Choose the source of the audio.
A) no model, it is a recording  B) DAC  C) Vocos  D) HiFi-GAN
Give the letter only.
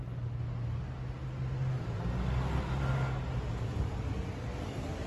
A